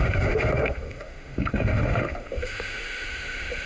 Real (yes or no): no